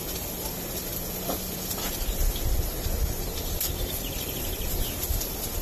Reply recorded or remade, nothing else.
recorded